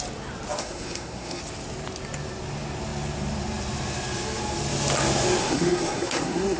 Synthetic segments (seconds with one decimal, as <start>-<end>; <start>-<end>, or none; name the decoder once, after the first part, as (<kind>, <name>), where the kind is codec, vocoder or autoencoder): 0.6-1.4 (codec, SNAC); 5.4-6.6